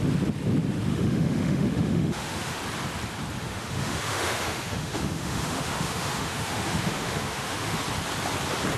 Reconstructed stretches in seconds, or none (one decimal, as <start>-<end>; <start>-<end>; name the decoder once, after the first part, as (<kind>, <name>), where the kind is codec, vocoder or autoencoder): 0.9-2.6 (autoencoder, DAC-VAE); 3.4-7.8